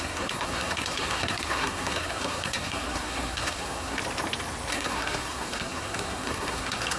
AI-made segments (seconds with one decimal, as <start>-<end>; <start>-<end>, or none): 0.0-4.0; 4.7-7.0